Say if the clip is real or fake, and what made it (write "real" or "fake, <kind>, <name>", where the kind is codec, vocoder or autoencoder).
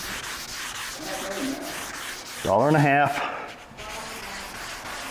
real